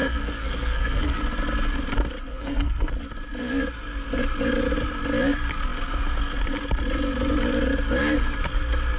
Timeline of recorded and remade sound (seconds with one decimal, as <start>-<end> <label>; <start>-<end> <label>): 0.0-1.2 remade; 1.2-2.3 recorded; 2.3-2.9 remade; 2.9-9.0 recorded